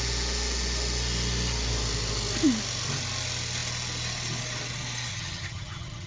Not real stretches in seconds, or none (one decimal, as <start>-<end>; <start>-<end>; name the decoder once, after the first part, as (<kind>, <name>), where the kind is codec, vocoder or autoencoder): 5.1-6.1 (vocoder, HiFi-GAN)